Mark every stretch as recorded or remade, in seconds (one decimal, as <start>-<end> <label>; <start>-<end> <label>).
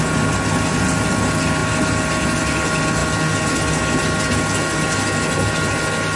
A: 0.0-6.2 recorded